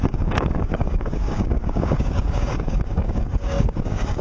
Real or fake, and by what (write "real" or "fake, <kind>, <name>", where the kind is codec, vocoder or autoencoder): fake, codec, DAC